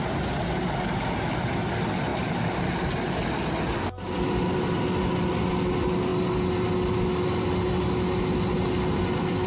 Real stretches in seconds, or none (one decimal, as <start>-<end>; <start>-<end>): 0.0-9.5